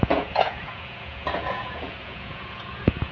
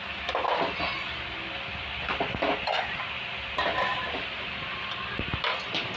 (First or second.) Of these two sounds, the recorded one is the second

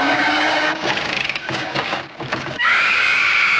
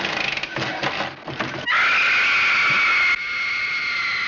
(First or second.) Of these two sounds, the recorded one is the second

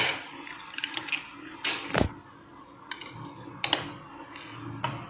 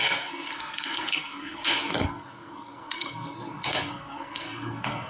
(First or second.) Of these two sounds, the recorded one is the first